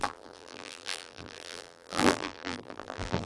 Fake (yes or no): yes